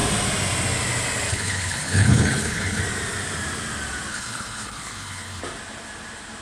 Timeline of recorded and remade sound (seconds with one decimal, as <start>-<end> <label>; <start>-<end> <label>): 0.0-1.3 recorded; 1.3-2.8 remade; 2.8-4.1 recorded; 4.1-5.4 remade; 5.4-6.4 recorded